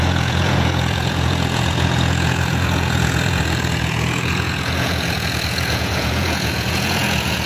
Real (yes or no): no